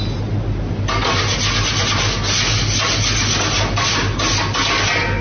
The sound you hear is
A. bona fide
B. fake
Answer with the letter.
A